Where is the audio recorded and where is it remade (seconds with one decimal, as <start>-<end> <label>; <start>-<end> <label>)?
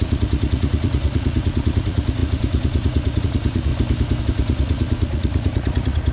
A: 0.0-3.7 remade; 3.7-4.2 recorded; 4.2-6.1 remade